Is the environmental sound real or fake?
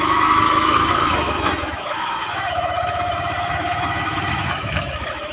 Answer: fake